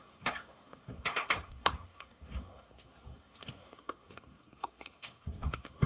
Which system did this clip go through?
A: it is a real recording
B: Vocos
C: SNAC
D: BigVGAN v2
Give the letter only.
C